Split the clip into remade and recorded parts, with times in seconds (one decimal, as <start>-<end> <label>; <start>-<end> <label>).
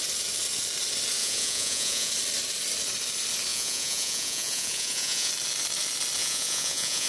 0.0-1.2 recorded; 1.2-2.1 remade; 2.1-3.5 recorded; 3.5-5.3 remade; 5.3-6.2 recorded; 6.2-7.1 remade